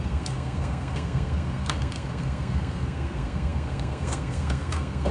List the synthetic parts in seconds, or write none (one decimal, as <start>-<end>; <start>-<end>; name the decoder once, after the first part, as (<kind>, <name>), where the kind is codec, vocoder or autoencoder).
0.0-5.1 (codec, SNAC)